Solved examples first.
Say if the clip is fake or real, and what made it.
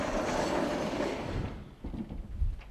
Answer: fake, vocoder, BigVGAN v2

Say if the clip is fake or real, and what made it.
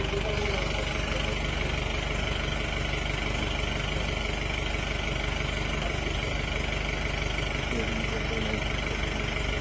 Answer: real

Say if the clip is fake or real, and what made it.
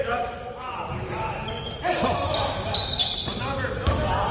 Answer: real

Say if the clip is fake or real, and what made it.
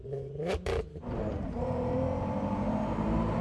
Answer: fake, vocoder, BigVGAN v2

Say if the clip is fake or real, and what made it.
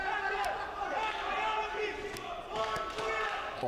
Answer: real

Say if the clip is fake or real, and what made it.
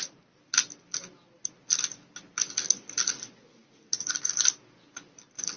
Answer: real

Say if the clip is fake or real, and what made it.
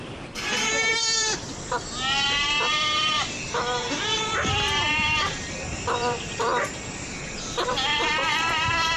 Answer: fake, vocoder, BigVGAN v2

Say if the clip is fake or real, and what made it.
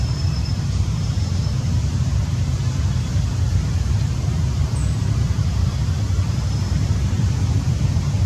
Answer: fake, vocoder, BigVGAN v2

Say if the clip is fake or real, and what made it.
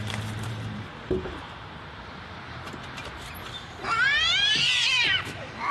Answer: fake, vocoder, BigVGAN v2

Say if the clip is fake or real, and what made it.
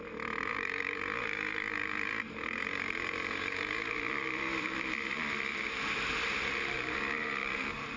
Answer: fake, vocoder, BigVGAN v2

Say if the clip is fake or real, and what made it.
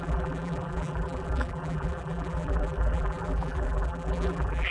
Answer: fake, vocoder, BigVGAN v2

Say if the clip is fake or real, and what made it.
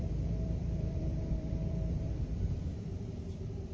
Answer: fake, vocoder, BigVGAN v2